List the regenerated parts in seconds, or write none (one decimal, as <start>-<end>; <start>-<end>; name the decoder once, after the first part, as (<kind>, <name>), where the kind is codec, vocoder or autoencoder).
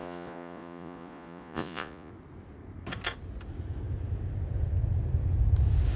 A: 0.0-2.1 (vocoder, Vocos)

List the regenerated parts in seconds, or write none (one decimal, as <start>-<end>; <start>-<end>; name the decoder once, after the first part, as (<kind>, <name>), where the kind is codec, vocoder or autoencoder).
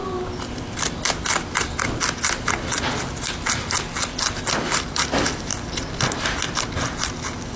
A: none